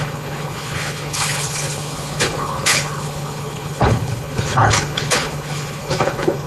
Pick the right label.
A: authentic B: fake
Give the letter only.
B